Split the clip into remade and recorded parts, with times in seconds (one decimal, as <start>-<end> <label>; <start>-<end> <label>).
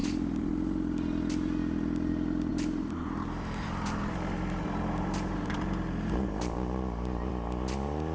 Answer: 0.0-0.5 remade; 0.5-2.5 recorded; 2.5-7.3 remade; 7.3-8.1 recorded